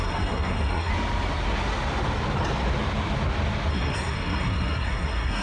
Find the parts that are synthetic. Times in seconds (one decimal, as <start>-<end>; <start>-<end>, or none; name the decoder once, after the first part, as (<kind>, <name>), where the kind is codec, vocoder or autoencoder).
0.0-0.9 (codec, SNAC); 3.7-5.4